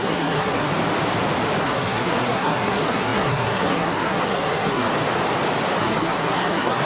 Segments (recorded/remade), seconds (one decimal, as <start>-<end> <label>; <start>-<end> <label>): 0.0-0.7 remade; 0.7-1.6 recorded; 1.6-4.9 remade; 4.9-5.8 recorded; 5.8-6.9 remade